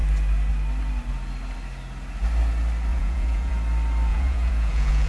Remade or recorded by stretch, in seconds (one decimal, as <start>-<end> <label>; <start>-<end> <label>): 0.0-2.9 recorded; 2.9-3.5 remade; 3.5-4.1 recorded; 4.1-5.1 remade